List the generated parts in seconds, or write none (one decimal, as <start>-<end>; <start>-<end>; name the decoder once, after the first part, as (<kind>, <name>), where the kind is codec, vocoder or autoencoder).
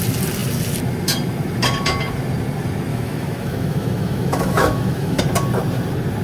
2.9-5.2 (autoencoder, DAC-VAE)